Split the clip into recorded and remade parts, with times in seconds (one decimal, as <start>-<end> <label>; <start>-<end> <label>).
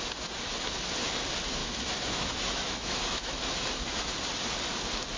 0.0-1.6 recorded; 1.6-4.1 remade; 4.1-5.2 recorded